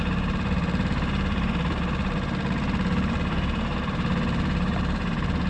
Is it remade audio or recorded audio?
remade